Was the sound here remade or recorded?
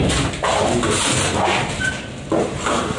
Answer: recorded